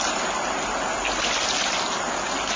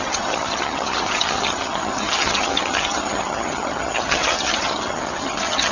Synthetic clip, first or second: second